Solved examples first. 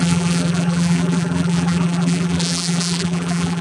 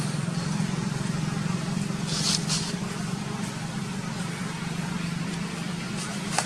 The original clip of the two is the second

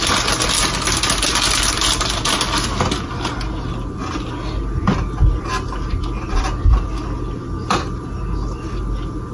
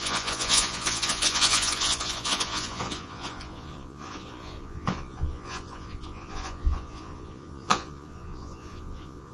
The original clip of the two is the first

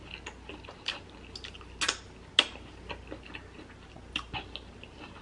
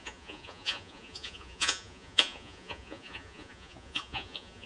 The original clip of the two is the first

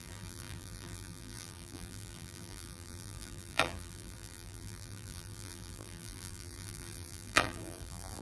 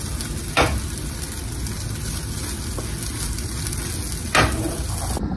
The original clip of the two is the second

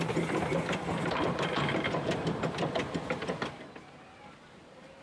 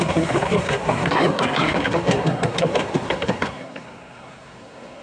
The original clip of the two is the first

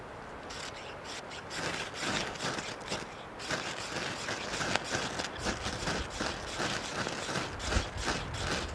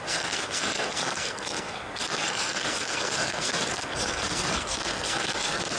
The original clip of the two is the first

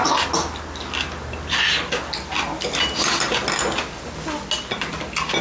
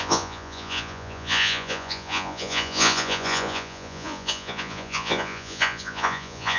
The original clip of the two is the first